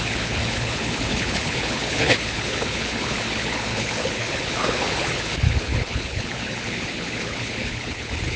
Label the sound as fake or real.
fake